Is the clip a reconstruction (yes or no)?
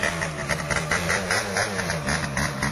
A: no